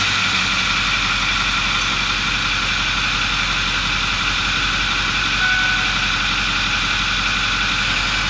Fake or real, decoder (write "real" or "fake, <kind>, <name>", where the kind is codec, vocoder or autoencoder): real